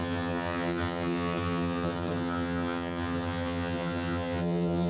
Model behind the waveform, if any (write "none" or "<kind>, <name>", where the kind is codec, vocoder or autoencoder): vocoder, HiFi-GAN